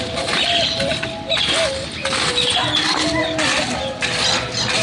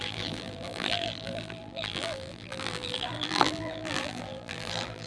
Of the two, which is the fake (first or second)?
second